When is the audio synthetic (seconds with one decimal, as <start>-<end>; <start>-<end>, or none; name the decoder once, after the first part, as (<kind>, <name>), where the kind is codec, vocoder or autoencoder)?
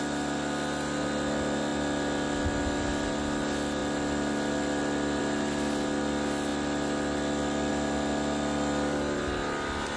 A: none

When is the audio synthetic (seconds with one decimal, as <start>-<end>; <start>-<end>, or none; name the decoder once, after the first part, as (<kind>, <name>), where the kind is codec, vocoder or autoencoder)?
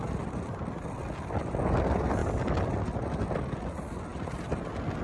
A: none